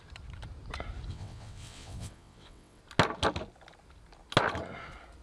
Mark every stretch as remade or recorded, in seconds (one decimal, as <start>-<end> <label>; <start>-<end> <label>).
0.0-1.1 recorded; 1.1-2.8 remade; 2.8-5.2 recorded